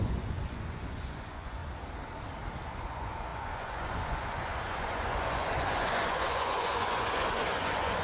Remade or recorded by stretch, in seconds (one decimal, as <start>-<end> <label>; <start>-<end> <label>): 0.0-1.6 remade; 1.6-2.7 recorded; 2.7-8.0 remade